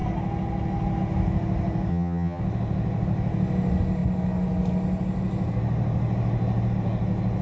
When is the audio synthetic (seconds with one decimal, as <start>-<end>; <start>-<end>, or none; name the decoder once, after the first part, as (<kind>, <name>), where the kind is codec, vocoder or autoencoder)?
1.9-2.4 (vocoder, HiFi-GAN)